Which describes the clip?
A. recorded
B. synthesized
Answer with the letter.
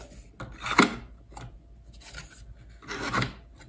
A